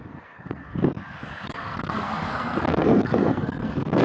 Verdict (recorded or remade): remade